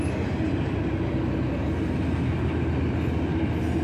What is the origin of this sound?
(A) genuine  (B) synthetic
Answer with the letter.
A